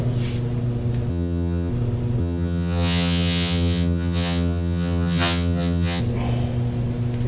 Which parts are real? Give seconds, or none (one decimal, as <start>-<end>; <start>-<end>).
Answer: 0.0-1.1; 1.7-2.2; 6.0-7.3